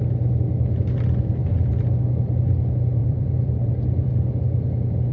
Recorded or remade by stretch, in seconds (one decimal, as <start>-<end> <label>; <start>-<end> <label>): 0.0-3.0 recorded; 3.0-4.1 remade; 4.1-5.1 recorded